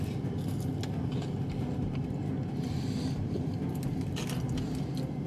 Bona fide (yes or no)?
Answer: yes